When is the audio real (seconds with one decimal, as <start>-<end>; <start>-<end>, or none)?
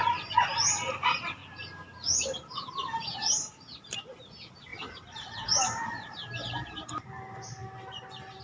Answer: 1.4-2.7; 7.6-8.4